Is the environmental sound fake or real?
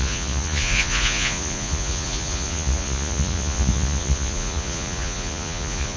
fake